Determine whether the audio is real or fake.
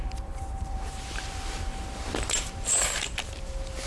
fake